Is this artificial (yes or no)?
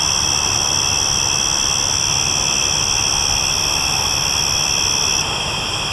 no